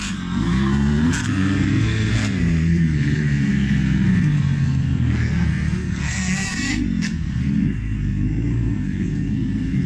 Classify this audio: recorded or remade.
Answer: remade